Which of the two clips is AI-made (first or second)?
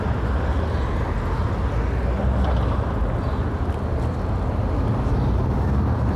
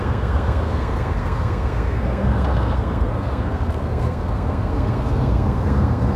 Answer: second